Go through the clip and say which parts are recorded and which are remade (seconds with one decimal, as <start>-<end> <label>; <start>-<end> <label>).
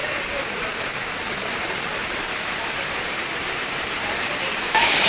0.0-2.0 recorded; 2.0-5.1 remade